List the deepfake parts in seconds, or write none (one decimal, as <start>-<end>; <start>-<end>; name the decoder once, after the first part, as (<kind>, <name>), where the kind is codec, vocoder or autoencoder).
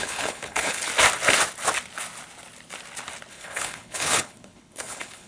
0.0-0.9 (codec, HILCodec); 3.3-5.3